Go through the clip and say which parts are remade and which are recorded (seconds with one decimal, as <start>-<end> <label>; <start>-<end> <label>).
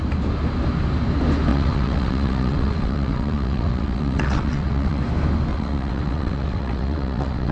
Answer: 0.0-1.5 recorded; 1.5-5.0 remade; 5.0-5.5 recorded; 5.5-7.5 remade